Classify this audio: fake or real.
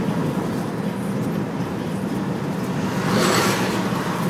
real